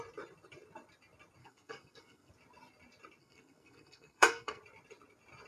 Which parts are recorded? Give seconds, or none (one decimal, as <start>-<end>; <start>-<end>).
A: 0.0-1.4; 2.3-3.2; 4.6-5.5